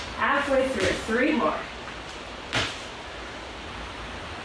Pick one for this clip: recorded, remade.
recorded